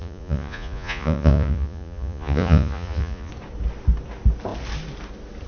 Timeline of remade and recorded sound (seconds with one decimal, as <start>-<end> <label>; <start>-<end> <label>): 0.0-3.3 remade; 3.3-5.5 recorded